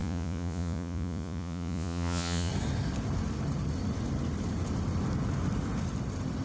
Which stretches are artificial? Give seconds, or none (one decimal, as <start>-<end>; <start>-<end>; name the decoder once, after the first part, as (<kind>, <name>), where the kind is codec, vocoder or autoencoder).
0.0-2.5 (vocoder, Vocos)